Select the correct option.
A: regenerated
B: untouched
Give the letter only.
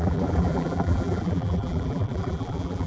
A